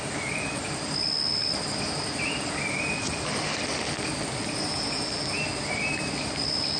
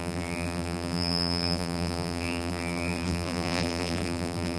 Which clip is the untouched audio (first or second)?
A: first